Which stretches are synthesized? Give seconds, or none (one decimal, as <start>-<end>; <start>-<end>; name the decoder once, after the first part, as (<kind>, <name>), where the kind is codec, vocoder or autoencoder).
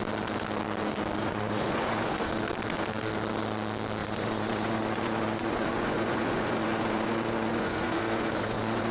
1.2-2.3 (vocoder, Vocos); 4.0-8.9